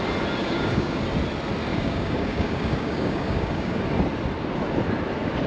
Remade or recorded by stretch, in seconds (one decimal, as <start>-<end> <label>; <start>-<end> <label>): 0.0-0.4 recorded; 0.4-1.0 remade; 1.0-1.7 recorded; 1.7-3.8 remade; 3.8-5.5 recorded